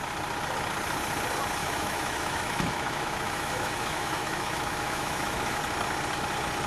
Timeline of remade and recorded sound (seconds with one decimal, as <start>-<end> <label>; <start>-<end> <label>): 0.0-1.6 recorded; 1.6-5.6 remade; 5.6-6.7 recorded